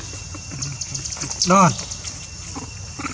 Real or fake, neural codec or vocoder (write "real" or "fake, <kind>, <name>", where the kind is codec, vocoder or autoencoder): real